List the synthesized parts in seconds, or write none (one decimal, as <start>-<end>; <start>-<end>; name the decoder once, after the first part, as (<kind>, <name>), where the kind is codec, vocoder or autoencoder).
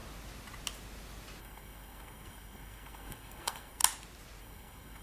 1.4-3.8 (codec, SNAC); 4.4-5.0